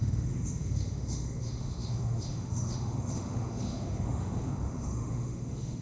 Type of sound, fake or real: fake